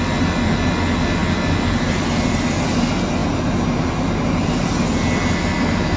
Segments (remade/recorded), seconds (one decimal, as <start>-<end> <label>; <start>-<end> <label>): 0.0-6.0 recorded